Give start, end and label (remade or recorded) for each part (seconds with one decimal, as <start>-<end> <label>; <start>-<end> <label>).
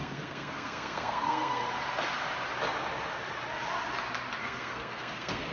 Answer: 0.0-1.6 remade; 1.6-4.4 recorded; 4.4-5.5 remade